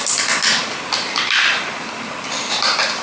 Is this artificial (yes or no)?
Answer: no